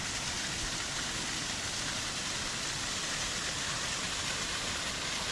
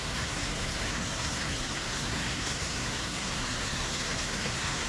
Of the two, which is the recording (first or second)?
first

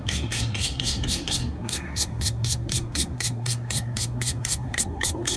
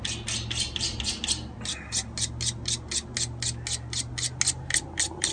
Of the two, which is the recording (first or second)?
second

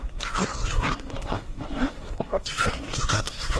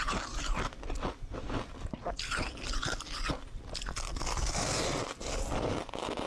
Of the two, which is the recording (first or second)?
second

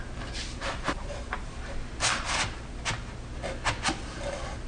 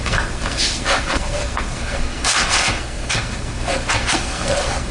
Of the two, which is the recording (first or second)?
first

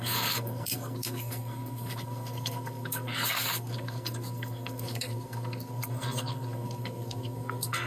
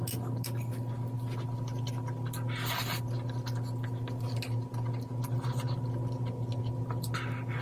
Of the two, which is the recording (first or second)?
second